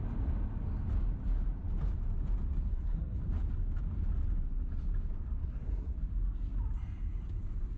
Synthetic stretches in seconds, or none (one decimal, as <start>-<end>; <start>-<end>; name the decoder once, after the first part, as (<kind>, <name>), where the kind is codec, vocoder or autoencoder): 2.7-3.2 (codec, SNAC); 5.4-5.9